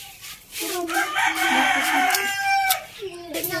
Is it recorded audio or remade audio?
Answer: remade